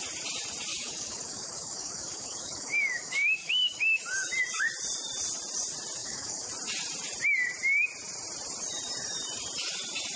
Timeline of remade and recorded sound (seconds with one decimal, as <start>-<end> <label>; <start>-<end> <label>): 0.0-0.7 recorded; 0.7-4.0 remade; 4.0-6.0 recorded; 6.0-6.5 remade; 6.5-10.2 recorded